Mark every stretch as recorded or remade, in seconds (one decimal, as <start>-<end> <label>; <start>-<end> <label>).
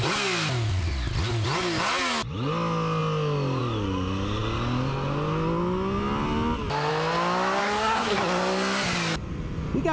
0.0-7.6 recorded; 7.6-8.2 remade; 8.2-9.9 recorded